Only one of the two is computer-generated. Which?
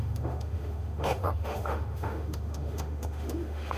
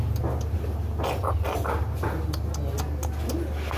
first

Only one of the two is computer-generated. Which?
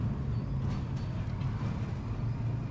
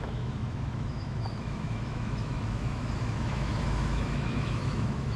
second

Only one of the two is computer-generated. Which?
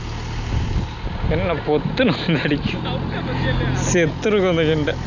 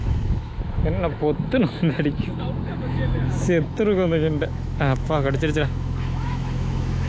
second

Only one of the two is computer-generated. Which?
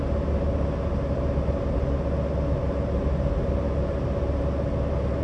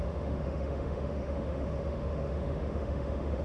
second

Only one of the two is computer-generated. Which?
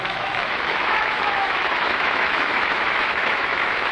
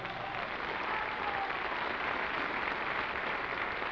first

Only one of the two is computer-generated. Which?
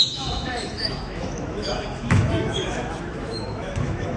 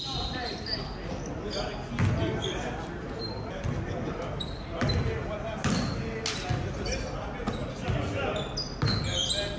first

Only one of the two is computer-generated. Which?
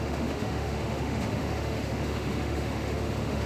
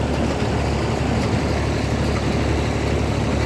first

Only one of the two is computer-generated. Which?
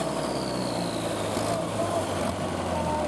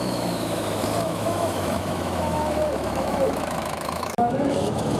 second